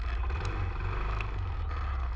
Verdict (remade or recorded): recorded